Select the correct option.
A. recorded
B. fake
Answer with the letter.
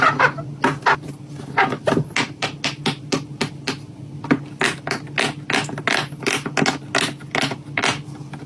A